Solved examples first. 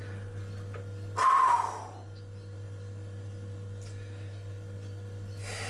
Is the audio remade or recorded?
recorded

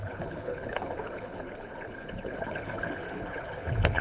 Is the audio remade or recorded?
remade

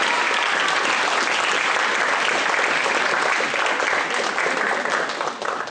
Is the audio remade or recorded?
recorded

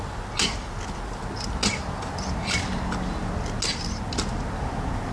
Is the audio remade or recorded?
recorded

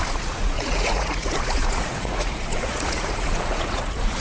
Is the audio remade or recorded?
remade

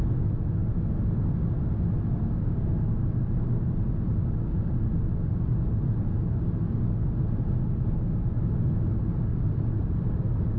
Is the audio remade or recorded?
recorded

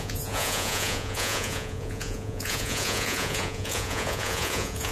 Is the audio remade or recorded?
remade